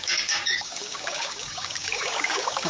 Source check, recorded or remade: remade